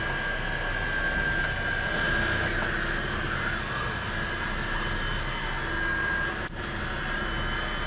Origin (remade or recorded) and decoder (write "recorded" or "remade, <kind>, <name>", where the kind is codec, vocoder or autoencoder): recorded